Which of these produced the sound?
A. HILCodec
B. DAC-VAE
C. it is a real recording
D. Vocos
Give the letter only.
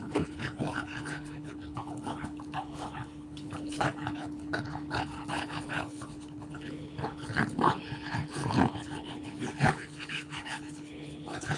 A